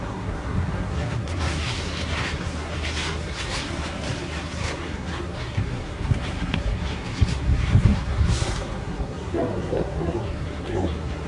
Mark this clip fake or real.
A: fake